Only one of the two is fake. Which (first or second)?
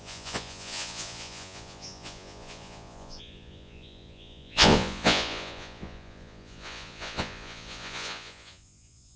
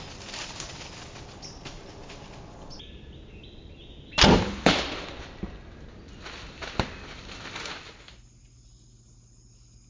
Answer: first